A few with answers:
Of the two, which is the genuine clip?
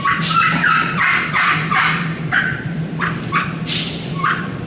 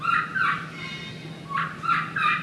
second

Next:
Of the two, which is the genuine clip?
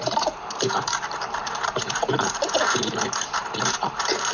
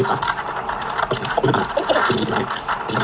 second